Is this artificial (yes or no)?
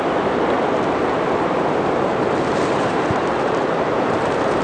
yes